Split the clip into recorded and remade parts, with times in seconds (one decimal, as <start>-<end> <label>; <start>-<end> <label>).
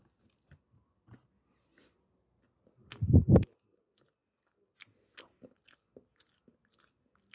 0.0-7.3 recorded